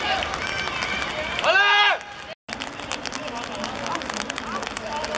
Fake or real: real